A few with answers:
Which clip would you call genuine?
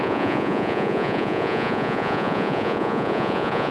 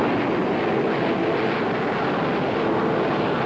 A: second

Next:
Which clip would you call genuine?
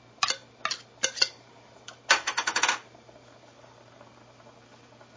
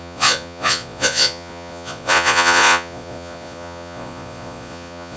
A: first